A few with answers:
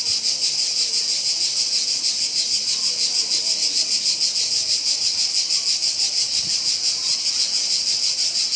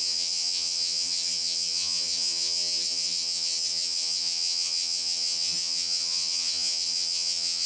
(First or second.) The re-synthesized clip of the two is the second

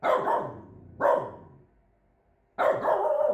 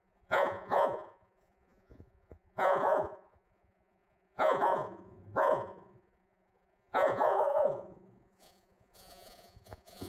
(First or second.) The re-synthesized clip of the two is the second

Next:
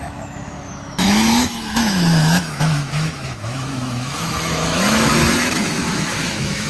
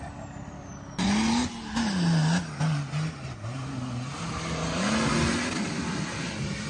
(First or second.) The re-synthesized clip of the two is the first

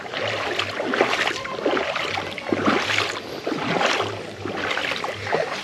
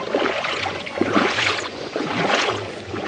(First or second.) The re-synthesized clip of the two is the second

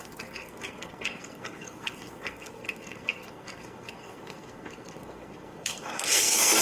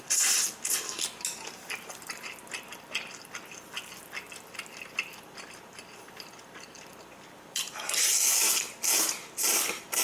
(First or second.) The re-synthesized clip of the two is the first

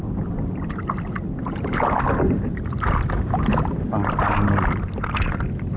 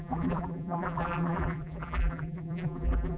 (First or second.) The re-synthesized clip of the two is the second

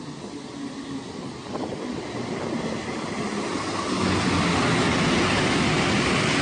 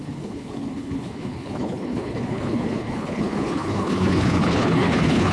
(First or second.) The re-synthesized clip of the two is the second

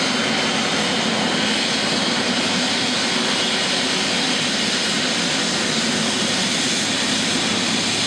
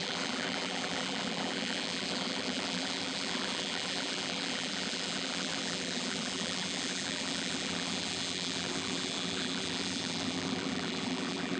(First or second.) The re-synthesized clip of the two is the second